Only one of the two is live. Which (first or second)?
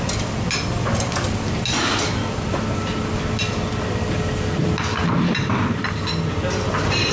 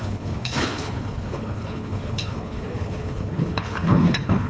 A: first